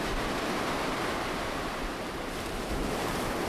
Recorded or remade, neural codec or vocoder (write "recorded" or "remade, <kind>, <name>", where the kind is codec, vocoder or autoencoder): recorded